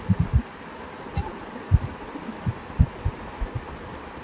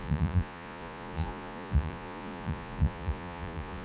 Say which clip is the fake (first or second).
second